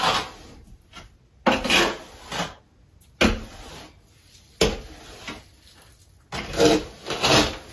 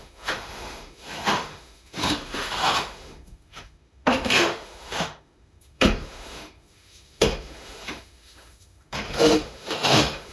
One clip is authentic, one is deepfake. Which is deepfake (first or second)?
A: second